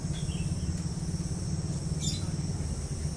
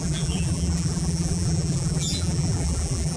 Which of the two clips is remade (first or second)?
second